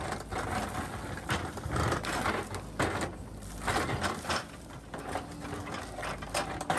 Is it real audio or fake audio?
real